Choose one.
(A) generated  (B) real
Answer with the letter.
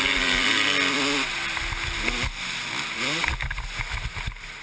B